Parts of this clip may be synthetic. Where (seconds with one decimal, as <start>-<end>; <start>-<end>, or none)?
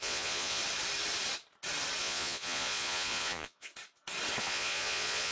0.0-0.6; 2.0-3.7; 4.4-5.3